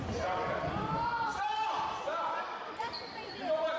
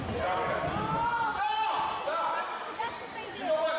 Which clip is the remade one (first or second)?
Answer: first